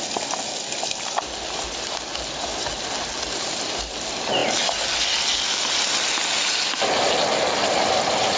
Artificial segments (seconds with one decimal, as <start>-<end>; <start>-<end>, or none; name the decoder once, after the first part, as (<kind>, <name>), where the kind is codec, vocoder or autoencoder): none

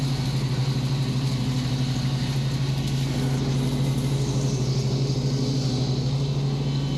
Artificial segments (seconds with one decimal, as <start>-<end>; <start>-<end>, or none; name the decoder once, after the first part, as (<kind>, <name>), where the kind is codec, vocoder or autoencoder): none